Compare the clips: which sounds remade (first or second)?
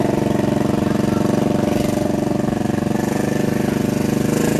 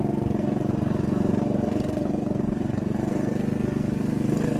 second